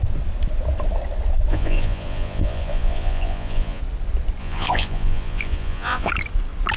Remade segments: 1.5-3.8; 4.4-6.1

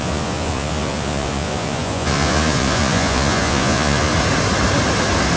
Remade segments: 0.0-4.1

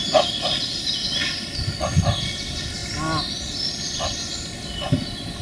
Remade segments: none

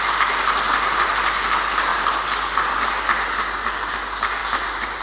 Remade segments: none